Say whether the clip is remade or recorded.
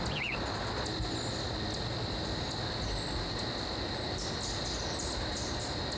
recorded